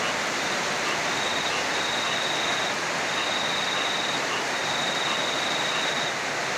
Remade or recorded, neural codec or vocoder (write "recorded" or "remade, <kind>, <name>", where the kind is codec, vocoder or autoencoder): recorded